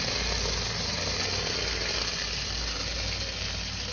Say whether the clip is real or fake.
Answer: real